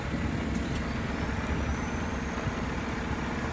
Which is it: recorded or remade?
recorded